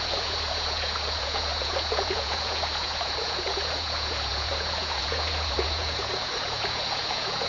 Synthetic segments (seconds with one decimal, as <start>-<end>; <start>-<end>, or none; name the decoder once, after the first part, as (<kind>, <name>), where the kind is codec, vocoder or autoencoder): 0.0-7.5 (vocoder, Vocos)